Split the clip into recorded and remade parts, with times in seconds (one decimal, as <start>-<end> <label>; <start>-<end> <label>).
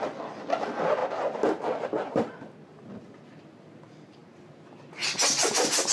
0.0-5.9 recorded